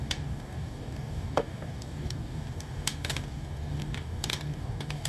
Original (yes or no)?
no